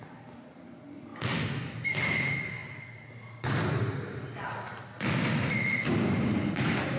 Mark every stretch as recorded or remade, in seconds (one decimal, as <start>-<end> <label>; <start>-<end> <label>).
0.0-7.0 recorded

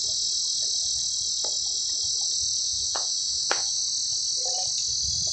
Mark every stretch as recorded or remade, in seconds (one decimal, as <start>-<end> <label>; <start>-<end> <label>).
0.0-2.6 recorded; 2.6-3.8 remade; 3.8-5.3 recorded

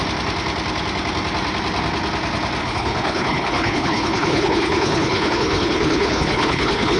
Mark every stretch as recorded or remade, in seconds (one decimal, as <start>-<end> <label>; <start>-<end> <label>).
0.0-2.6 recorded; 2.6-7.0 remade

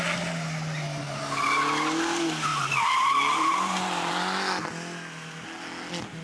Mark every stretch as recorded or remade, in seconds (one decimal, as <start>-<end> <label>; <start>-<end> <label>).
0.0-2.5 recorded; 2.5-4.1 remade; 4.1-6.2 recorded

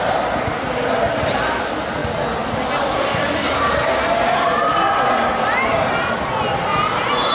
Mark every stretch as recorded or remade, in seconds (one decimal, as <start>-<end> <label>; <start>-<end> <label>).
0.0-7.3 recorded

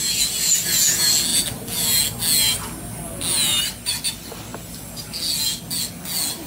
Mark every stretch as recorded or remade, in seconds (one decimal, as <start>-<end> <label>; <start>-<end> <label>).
0.0-6.5 recorded